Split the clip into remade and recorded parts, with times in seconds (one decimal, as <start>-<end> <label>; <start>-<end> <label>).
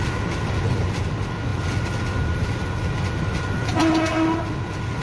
0.0-5.0 recorded